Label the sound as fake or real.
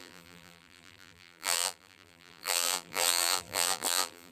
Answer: fake